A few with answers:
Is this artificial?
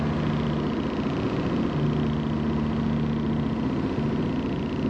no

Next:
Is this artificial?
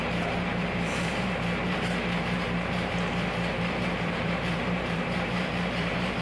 yes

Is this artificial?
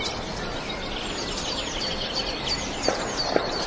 no